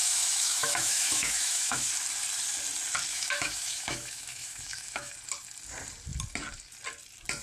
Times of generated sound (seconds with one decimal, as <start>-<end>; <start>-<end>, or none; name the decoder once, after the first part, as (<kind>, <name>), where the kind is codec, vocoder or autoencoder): 0.0-1.9 (autoencoder, DAC-VAE); 3.1-5.1